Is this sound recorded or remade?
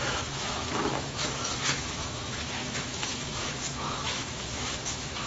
remade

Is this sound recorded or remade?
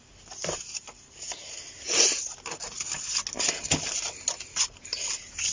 recorded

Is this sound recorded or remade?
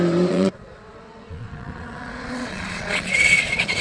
remade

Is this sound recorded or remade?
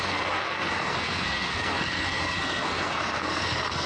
remade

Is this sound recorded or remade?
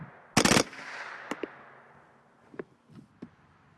recorded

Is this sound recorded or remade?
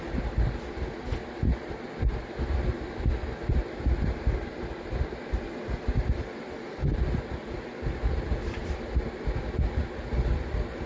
recorded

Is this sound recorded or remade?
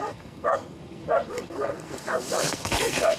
remade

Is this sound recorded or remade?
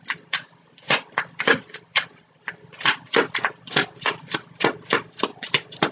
recorded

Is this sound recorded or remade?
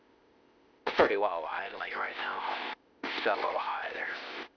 remade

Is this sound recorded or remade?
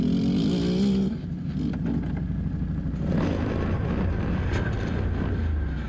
recorded